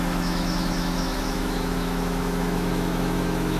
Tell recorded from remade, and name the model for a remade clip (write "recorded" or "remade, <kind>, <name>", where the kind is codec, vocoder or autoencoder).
remade, autoencoder, DAC-VAE